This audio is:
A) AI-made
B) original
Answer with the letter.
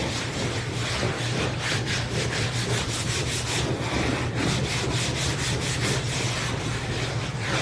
A